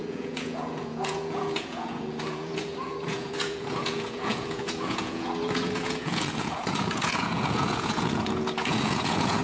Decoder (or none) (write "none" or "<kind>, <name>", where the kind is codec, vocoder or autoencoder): vocoder, Vocos